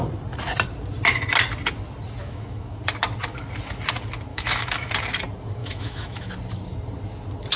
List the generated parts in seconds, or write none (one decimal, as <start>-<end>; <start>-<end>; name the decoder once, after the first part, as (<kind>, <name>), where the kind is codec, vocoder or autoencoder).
2.2-2.8 (autoencoder, DAC-VAE); 4.3-4.9; 5.6-6.3